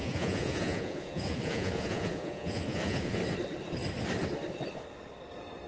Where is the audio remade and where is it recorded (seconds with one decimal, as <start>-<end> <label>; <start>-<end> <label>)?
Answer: 0.0-3.2 remade; 3.2-5.7 recorded